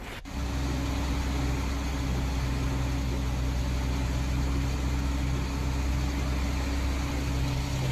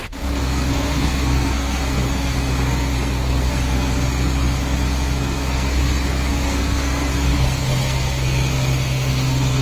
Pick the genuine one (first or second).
first